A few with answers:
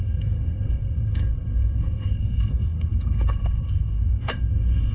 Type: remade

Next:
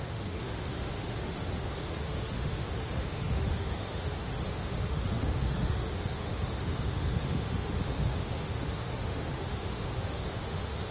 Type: remade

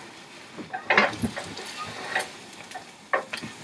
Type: recorded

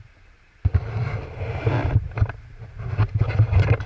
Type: recorded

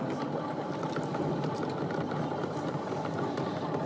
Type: recorded